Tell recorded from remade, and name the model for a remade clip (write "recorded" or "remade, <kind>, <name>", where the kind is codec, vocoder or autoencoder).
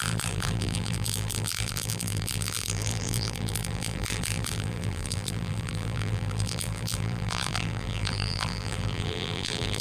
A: remade, vocoder, BigVGAN v2